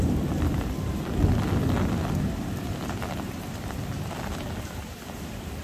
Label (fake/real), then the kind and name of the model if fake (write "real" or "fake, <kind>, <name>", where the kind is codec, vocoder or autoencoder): real